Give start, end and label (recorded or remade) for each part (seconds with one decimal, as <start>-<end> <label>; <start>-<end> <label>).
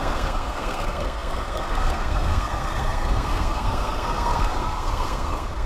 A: 0.0-5.7 remade